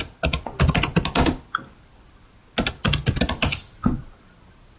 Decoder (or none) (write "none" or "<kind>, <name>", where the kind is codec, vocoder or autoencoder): none